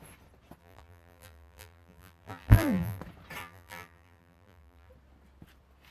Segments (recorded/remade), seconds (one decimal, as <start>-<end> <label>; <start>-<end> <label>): 0.0-0.6 recorded; 0.6-3.0 remade; 3.0-3.4 recorded; 3.4-4.9 remade; 4.9-5.9 recorded